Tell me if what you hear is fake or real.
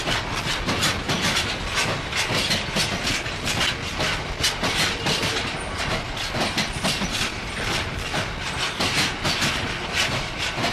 real